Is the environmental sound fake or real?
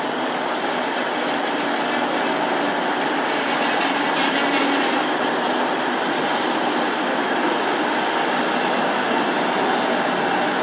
real